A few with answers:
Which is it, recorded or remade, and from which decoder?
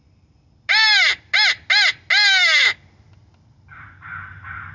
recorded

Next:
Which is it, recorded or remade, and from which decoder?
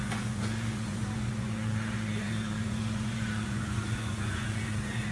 remade, vocoder, Vocos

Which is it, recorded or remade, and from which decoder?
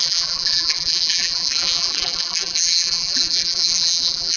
remade, vocoder, BigVGAN v2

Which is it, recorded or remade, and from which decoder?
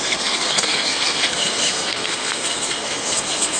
remade, codec, SNAC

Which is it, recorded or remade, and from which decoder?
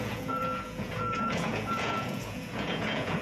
remade, vocoder, Vocos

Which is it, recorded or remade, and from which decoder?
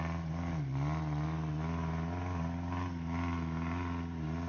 recorded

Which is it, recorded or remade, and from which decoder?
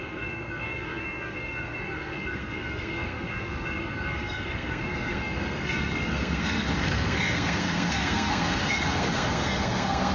remade, codec, SNAC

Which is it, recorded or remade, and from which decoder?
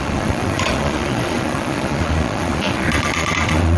remade, vocoder, Vocos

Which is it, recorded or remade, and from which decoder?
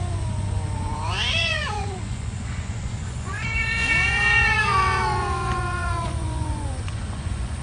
remade, vocoder, Vocos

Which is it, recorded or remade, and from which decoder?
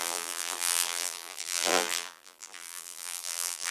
remade, vocoder, BigVGAN v2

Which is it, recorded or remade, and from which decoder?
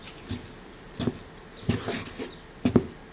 recorded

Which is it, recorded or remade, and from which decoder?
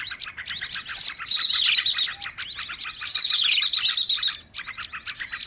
recorded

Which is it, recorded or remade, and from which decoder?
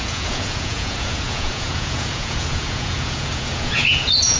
remade, vocoder, Vocos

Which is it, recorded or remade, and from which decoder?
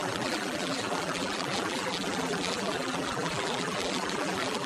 remade, vocoder, BigVGAN v2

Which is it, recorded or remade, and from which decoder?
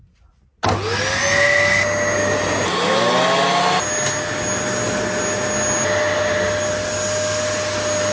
recorded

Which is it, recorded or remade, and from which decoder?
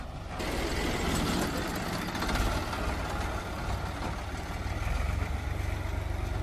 recorded